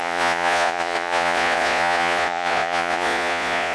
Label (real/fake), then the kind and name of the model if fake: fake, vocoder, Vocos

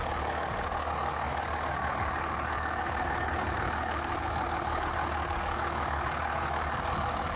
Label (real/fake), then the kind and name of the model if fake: fake, codec, DAC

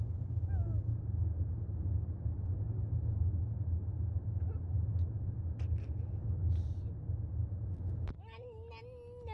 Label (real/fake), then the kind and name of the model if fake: real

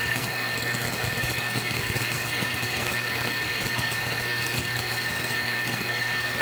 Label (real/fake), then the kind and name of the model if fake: fake, codec, SNAC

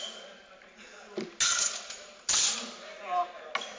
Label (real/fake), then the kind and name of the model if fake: real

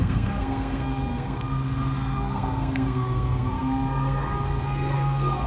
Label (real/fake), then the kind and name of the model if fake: fake, codec, SNAC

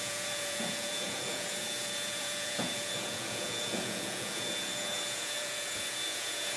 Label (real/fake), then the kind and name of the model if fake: fake, vocoder, Vocos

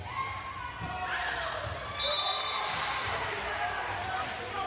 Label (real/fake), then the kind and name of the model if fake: real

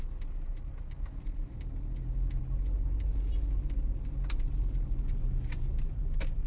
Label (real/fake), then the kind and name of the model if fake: real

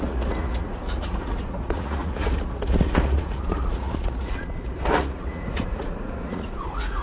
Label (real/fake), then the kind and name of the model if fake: fake, vocoder, Vocos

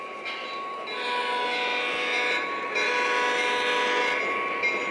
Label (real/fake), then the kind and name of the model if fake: real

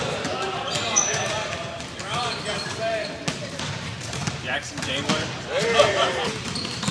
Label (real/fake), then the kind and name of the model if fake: fake, vocoder, BigVGAN v2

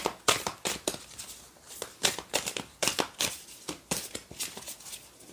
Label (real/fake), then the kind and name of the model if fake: real